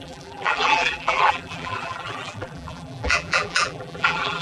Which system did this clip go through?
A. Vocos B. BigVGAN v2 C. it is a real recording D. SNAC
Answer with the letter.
B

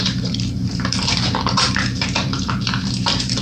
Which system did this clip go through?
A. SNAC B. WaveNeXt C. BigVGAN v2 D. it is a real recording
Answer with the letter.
C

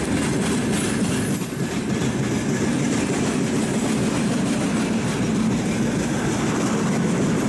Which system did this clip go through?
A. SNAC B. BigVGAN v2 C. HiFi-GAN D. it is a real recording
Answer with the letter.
D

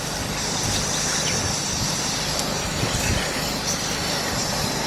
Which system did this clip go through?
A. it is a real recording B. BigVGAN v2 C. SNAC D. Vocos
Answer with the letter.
A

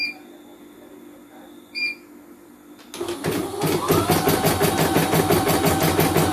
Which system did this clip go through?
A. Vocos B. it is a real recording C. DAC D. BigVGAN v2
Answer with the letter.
B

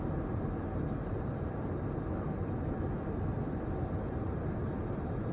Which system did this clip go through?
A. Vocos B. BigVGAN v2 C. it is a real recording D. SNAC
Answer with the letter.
C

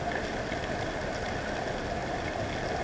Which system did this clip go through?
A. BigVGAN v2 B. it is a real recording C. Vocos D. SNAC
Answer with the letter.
B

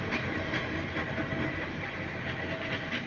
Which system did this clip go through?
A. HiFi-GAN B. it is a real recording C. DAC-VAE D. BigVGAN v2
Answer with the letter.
B